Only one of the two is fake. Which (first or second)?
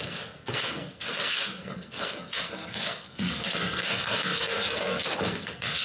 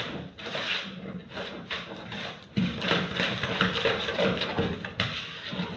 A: first